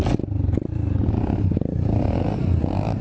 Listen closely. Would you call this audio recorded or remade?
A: recorded